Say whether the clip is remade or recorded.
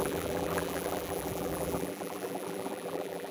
remade